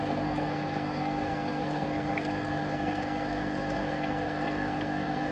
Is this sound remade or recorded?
remade